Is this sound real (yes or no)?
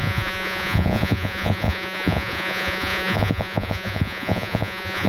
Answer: no